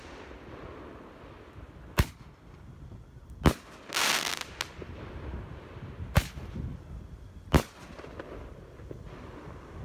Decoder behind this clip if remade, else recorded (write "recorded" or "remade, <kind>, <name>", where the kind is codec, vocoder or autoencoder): recorded